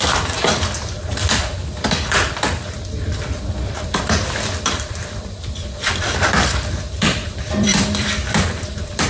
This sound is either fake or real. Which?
fake